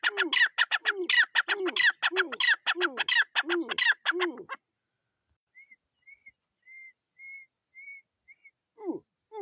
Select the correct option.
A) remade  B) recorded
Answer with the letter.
B